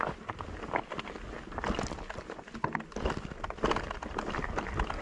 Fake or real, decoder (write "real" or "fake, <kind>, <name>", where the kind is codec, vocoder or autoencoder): real